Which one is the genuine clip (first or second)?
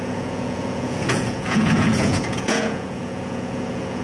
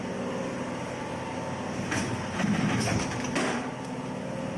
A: second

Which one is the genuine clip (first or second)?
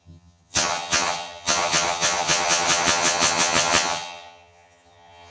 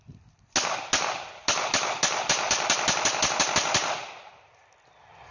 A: second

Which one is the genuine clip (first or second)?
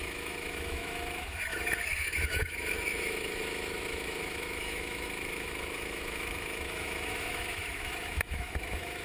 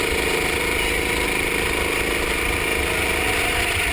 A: second